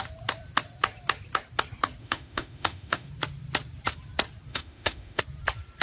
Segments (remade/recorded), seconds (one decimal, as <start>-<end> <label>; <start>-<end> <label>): 0.0-2.0 recorded; 2.0-3.1 remade; 3.1-4.5 recorded; 4.5-5.2 remade; 5.2-5.8 recorded